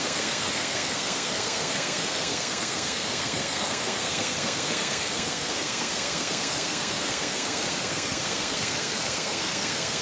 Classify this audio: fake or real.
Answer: fake